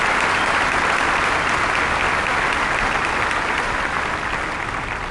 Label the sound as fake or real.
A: real